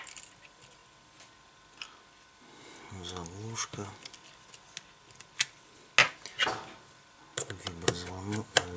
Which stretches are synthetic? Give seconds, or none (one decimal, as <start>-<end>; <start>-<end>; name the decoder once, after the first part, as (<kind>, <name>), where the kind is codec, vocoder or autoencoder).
none